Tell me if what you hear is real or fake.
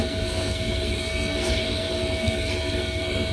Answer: fake